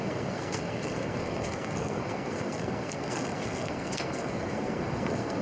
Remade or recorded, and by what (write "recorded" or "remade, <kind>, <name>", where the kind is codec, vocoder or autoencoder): remade, codec, SNAC